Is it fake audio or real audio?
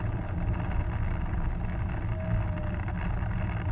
real